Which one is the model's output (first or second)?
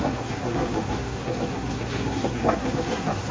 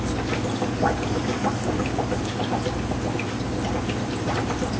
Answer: first